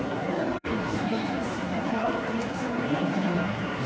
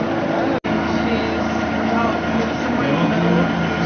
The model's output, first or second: first